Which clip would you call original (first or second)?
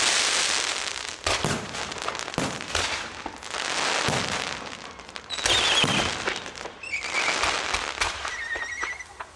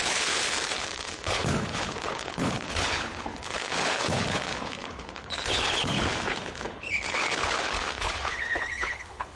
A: first